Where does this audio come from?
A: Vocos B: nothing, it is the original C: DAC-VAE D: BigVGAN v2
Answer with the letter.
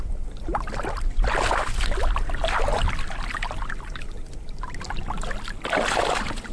B